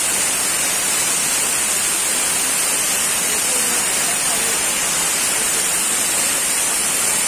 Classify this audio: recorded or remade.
recorded